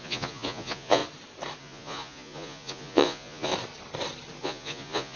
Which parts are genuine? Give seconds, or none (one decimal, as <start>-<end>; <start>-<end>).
1.0-1.6; 3.5-4.4

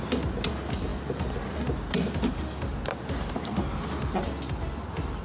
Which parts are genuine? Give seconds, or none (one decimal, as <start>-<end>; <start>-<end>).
0.0-5.2

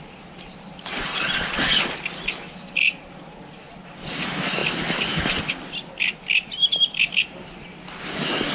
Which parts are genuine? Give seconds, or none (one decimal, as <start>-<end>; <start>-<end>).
0.0-8.5

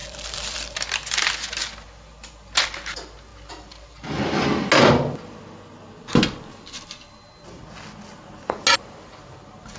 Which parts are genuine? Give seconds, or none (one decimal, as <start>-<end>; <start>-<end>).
1.2-9.8

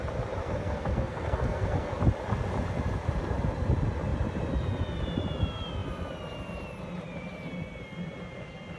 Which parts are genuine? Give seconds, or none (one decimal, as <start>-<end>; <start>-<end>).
0.0-0.4; 2.0-8.8